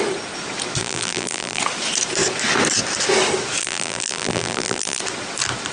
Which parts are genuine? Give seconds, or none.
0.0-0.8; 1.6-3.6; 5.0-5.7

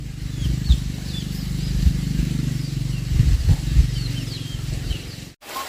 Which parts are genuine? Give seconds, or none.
0.0-5.7

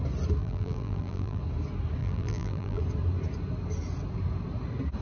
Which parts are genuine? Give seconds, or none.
0.0-0.4; 1.4-2.0; 2.8-5.0

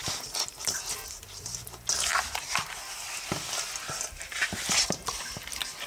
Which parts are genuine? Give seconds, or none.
0.0-5.9

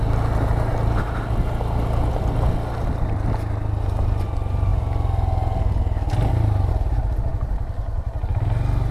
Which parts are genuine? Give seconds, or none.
0.0-7.3; 8.0-8.9

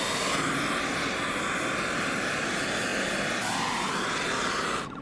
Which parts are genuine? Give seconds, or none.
0.0-5.0

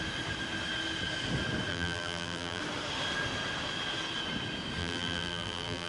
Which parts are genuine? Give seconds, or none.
0.0-1.7; 2.6-4.8